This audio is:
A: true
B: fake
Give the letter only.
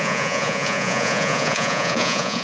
B